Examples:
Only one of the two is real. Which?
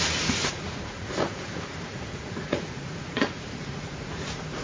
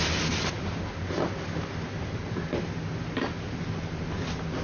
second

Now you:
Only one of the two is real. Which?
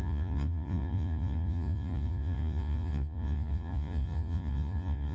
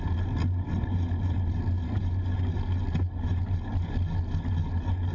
second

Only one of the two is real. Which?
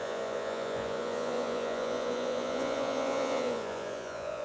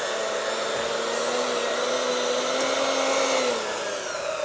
second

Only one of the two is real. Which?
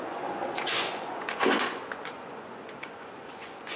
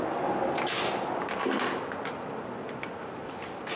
second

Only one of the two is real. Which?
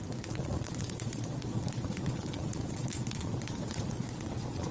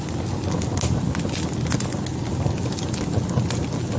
second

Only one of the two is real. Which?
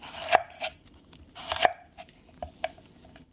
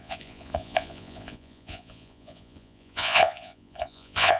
first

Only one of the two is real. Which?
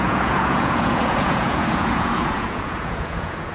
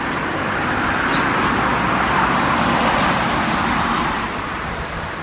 second